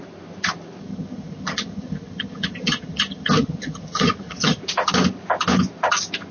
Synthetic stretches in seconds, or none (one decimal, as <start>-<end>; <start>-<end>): 0.8-4.6